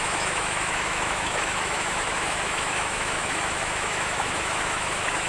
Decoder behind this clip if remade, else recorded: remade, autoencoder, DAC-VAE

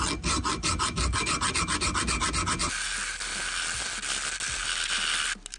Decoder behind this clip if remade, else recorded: recorded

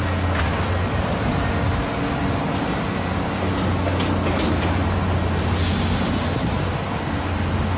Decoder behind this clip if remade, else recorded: recorded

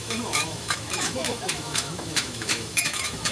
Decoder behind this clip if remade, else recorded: remade, autoencoder, DAC-VAE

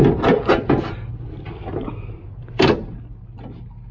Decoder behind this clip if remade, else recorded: recorded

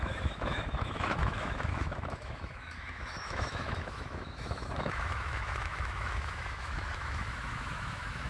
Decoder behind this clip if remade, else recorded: remade, autoencoder, DAC-VAE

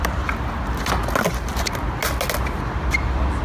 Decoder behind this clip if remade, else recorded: recorded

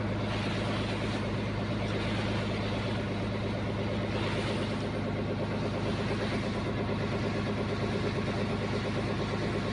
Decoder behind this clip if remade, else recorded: recorded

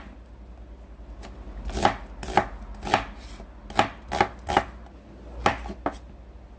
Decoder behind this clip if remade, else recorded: recorded